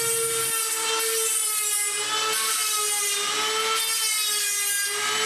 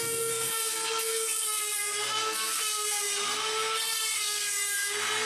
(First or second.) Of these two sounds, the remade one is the second